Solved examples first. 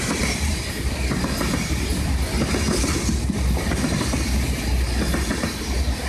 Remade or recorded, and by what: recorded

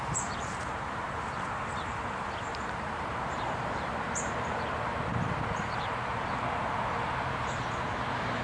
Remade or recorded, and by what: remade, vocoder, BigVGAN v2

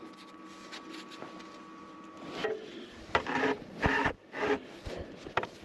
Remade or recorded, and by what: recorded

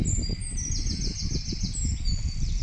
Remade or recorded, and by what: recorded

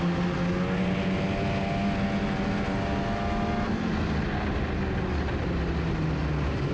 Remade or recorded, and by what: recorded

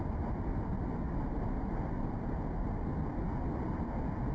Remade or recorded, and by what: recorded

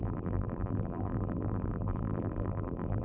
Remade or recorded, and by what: remade, vocoder, BigVGAN v2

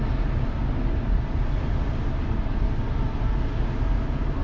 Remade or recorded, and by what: recorded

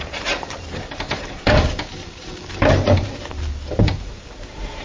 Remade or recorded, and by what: remade, vocoder, BigVGAN v2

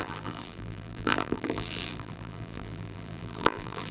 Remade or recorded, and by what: remade, vocoder, BigVGAN v2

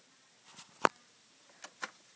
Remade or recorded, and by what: recorded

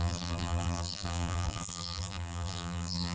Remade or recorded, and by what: remade, vocoder, BigVGAN v2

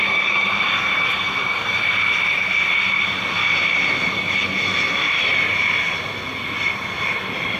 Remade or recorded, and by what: remade, vocoder, BigVGAN v2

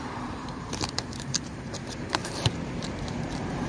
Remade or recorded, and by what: remade, vocoder, BigVGAN v2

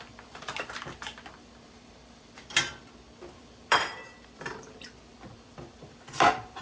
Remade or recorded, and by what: remade, vocoder, BigVGAN v2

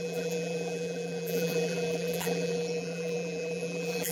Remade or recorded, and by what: remade, vocoder, BigVGAN v2